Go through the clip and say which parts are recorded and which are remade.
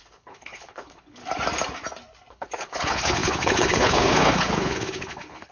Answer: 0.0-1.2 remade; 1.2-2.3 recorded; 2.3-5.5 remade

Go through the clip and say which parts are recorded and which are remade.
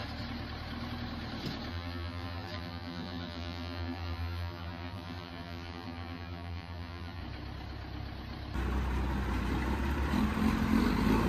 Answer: 0.0-1.7 recorded; 1.7-7.2 remade; 7.2-11.3 recorded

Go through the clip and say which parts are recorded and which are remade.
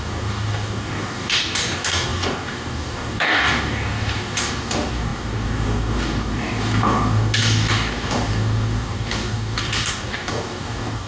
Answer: 0.0-11.1 remade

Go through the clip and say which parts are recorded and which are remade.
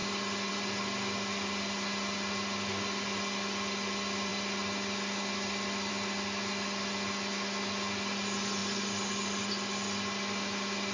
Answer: 0.0-10.9 recorded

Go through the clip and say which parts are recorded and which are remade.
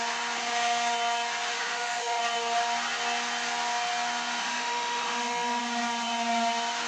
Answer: 0.0-1.5 recorded; 1.5-2.2 remade; 2.2-4.4 recorded; 4.4-5.6 remade; 5.6-6.9 recorded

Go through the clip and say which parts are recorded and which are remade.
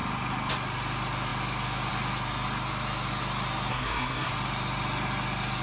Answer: 0.0-3.7 recorded; 3.7-4.3 remade; 4.3-5.6 recorded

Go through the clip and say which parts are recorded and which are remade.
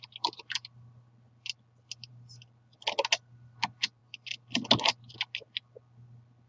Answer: 0.0-6.5 recorded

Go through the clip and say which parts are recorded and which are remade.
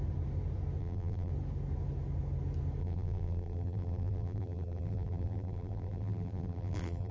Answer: 0.0-0.8 recorded; 0.8-1.3 remade; 1.3-2.8 recorded; 2.8-7.1 remade